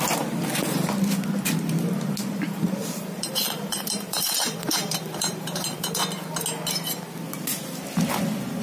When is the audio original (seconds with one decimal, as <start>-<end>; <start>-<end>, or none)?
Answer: 0.0-2.8; 6.0-8.6